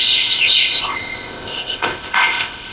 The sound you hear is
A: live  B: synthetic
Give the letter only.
B